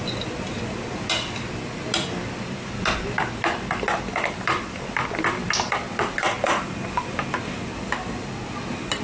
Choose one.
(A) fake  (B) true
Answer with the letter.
B